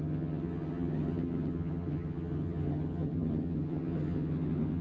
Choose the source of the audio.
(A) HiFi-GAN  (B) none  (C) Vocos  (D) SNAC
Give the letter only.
A